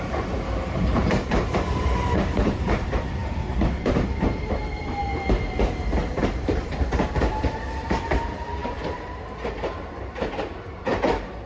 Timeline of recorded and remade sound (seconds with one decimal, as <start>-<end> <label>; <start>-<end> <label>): 0.0-11.5 remade